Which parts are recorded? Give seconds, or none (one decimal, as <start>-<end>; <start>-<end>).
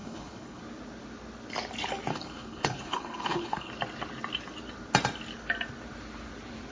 0.6-2.1; 3.7-6.7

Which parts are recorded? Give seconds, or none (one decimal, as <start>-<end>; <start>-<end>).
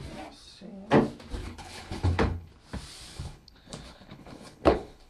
0.0-1.4; 2.5-3.1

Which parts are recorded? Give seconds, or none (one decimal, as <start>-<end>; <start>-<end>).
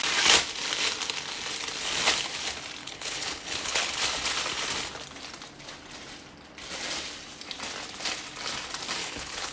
0.0-2.8; 3.9-9.0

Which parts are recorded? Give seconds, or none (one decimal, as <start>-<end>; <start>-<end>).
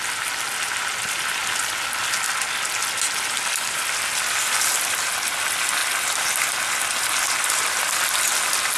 0.0-8.8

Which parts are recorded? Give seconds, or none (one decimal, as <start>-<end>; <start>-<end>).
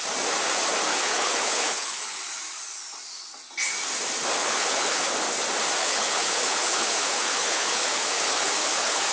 0.0-0.9; 2.2-4.4; 5.1-5.8